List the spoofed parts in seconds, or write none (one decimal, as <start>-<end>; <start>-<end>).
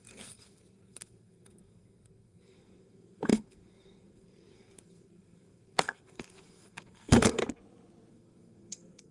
0.0-7.4; 8.1-9.1